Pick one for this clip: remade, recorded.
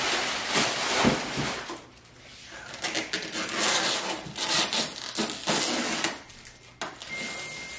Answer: recorded